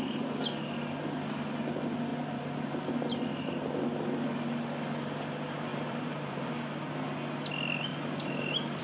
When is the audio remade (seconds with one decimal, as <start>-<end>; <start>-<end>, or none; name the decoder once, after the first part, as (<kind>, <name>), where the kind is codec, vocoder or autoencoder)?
2.1-2.8 (vocoder, BigVGAN v2); 5.7-6.5